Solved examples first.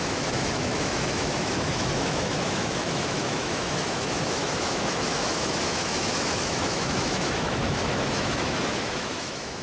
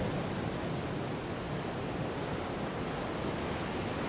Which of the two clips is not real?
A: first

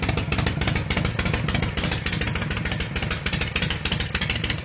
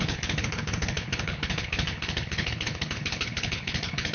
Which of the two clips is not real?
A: second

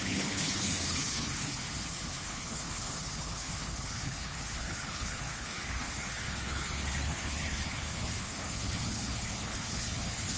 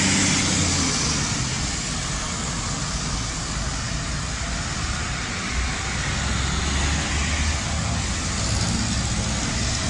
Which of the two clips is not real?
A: first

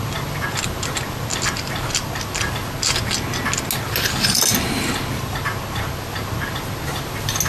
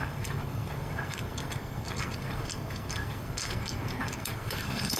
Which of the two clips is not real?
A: second